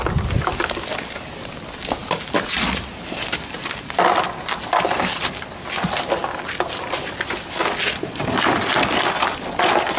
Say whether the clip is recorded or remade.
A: recorded